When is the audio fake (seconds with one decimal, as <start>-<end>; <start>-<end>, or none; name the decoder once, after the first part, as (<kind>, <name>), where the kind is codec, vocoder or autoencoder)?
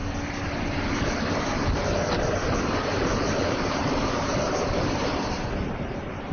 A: 2.9-6.3 (vocoder, BigVGAN v2)